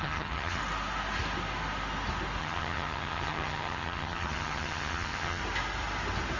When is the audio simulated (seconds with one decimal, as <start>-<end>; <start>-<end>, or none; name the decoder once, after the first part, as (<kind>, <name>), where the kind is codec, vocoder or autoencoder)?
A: 0.0-0.6 (vocoder, HiFi-GAN); 2.4-5.4